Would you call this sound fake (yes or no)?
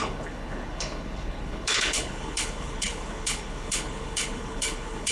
yes